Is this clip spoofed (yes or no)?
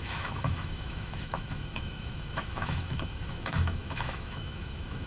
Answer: yes